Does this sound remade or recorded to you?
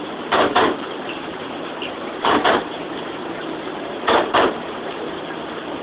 remade